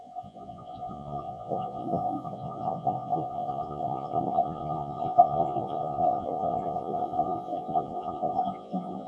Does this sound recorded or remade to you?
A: remade